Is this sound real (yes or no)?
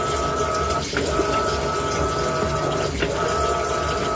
yes